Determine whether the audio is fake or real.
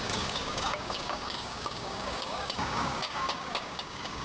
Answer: fake